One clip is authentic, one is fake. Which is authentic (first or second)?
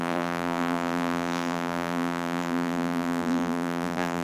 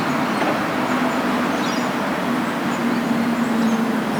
second